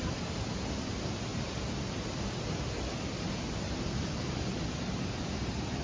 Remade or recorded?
recorded